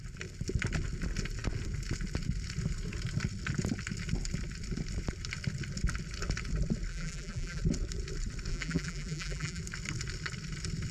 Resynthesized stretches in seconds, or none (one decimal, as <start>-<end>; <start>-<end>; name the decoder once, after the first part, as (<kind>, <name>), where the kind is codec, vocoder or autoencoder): 6.9-7.6 (vocoder, BigVGAN v2); 8.5-9.6